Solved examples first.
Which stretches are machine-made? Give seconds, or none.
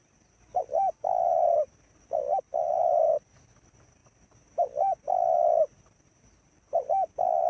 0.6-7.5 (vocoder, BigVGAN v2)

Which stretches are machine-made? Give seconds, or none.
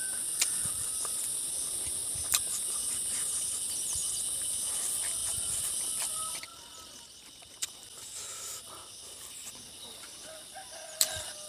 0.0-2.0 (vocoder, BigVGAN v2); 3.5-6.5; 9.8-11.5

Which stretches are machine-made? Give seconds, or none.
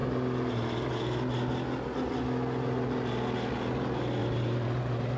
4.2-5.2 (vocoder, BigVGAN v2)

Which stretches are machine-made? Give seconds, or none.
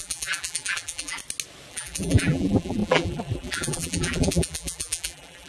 0.0-1.2 (vocoder, BigVGAN v2); 1.7-5.5